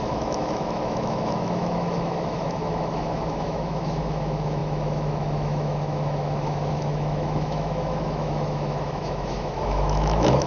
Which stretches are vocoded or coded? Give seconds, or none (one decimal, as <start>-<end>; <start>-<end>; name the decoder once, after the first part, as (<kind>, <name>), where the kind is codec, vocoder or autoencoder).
0.0-10.5 (autoencoder, DAC-VAE)